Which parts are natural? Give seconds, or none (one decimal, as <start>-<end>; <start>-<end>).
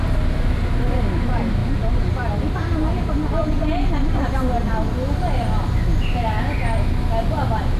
0.0-7.8